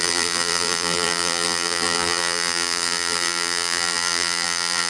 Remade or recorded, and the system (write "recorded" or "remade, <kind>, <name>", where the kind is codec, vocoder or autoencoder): remade, vocoder, BigVGAN v2